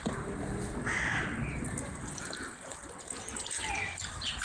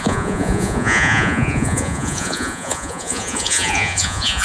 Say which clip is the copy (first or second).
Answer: second